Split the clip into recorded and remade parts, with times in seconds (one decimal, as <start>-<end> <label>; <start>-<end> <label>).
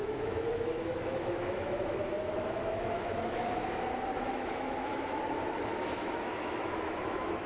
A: 0.0-7.5 remade